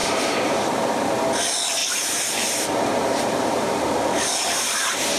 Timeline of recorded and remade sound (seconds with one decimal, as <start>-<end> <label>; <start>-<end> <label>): 0.0-0.8 remade; 0.8-1.8 recorded; 1.8-5.2 remade